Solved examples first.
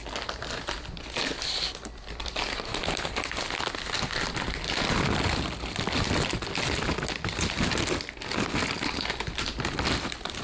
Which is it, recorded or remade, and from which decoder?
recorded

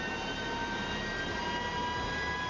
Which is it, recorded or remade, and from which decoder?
recorded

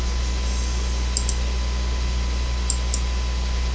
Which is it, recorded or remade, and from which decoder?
recorded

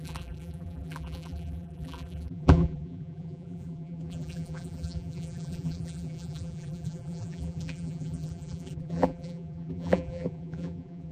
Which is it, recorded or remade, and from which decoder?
remade, vocoder, BigVGAN v2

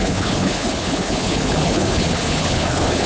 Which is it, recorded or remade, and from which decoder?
remade, codec, HILCodec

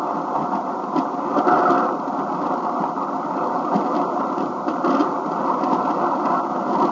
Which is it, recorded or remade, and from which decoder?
recorded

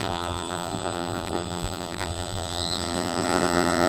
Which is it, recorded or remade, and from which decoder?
remade, vocoder, BigVGAN v2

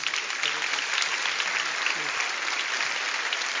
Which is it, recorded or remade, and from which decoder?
recorded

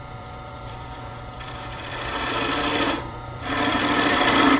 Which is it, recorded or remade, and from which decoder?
remade, vocoder, BigVGAN v2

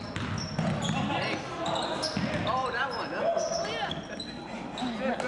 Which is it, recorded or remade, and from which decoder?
recorded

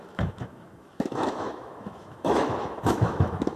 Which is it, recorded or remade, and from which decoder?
remade, autoencoder, DAC-VAE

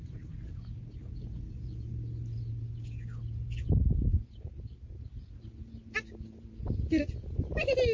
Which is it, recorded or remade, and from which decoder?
recorded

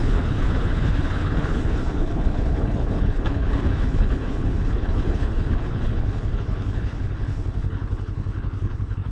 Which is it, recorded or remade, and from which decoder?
remade, codec, HILCodec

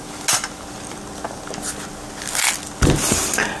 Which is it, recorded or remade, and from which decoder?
recorded